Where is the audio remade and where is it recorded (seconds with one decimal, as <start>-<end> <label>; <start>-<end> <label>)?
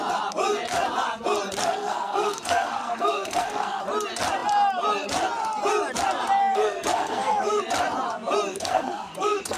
0.0-1.6 recorded; 1.6-3.8 remade; 3.8-6.4 recorded; 6.4-7.6 remade; 7.6-8.5 recorded; 8.5-9.6 remade